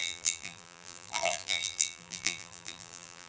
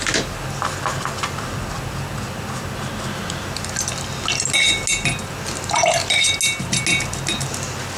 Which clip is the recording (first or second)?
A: second